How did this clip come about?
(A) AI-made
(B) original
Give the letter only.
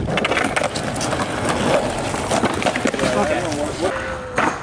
B